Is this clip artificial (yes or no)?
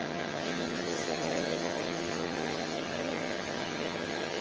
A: yes